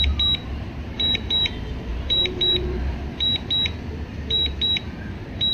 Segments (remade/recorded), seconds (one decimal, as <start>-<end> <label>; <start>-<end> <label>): 0.0-0.5 recorded; 0.5-1.5 remade; 1.5-1.9 recorded; 1.9-3.5 remade; 3.5-4.1 recorded; 4.1-5.5 remade